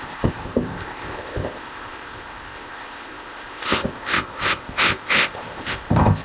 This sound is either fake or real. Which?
fake